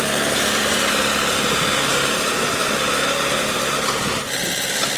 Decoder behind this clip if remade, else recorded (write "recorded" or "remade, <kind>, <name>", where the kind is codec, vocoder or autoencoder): recorded